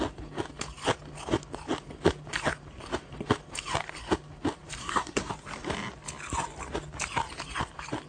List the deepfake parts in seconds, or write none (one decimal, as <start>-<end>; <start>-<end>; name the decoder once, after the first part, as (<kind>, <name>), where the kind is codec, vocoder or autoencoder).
4.8-5.3 (codec, SNAC)